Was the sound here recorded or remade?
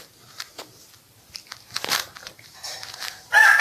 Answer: remade